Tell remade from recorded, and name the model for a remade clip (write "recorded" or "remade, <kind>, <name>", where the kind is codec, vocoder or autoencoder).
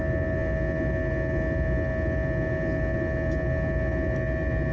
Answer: recorded